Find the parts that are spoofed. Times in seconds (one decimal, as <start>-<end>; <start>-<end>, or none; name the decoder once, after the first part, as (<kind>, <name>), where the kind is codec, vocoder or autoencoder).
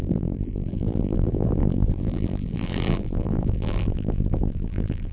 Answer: 0.0-5.1 (vocoder, BigVGAN v2)